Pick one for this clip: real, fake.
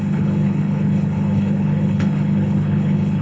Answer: fake